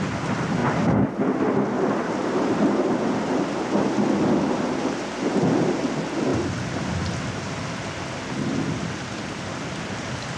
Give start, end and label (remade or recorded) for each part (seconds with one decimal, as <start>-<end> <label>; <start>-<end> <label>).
0.0-10.4 recorded